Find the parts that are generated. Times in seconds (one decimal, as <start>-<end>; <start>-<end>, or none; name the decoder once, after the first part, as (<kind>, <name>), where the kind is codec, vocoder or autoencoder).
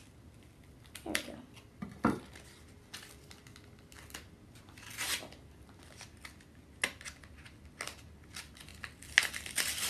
none